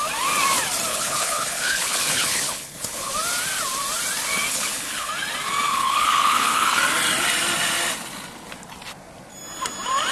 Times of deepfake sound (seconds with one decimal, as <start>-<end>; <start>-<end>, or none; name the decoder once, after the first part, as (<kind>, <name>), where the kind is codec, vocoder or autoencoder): 0.9-3.1 (codec, HILCodec); 4.5-5.1; 5.7-6.8